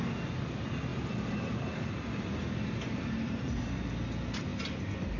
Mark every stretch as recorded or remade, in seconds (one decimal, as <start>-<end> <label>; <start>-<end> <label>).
0.0-0.9 recorded; 0.9-3.6 remade; 3.6-4.5 recorded; 4.5-5.2 remade